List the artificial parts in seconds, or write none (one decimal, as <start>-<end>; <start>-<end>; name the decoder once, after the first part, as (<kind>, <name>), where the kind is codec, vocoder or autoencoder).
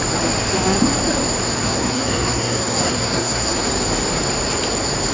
1.6-3.6 (codec, SNAC)